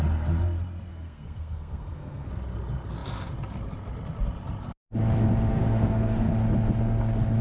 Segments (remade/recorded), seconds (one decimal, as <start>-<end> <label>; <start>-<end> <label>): 0.0-0.9 recorded; 0.9-2.3 remade; 2.3-5.5 recorded; 5.5-6.3 remade; 6.3-7.4 recorded